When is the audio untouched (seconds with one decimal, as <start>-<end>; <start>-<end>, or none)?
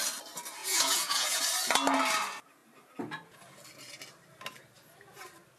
0.0-0.6; 1.4-5.6